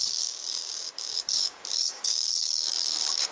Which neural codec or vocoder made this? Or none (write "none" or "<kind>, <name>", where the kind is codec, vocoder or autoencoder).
codec, DAC